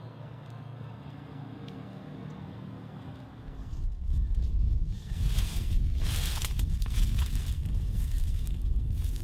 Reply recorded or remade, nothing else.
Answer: remade